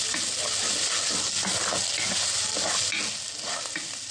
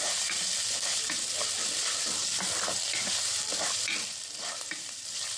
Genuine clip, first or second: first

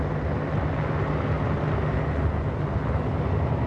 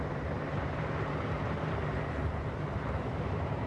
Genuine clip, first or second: first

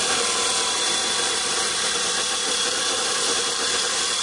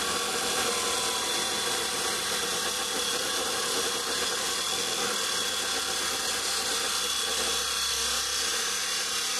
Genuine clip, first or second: second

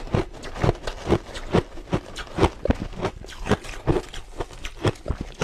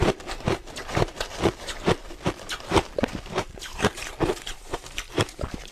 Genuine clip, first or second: first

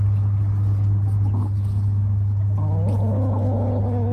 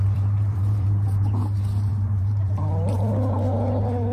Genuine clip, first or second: first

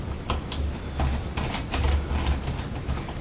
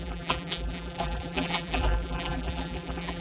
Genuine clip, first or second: first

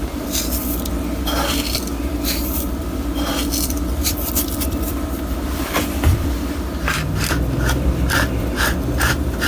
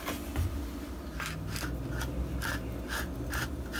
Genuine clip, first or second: second